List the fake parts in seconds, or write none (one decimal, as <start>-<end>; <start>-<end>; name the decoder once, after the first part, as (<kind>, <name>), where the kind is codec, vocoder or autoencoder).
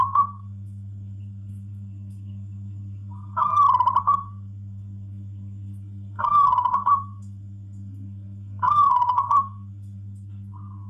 0.0-3.5 (codec, SNAC); 4.0-10.9